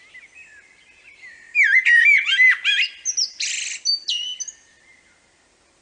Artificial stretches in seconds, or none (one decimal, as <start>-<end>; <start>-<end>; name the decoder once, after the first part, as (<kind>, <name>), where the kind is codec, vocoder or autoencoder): none